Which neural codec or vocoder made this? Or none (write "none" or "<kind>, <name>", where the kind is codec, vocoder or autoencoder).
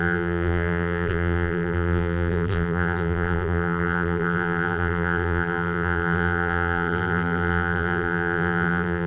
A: vocoder, BigVGAN v2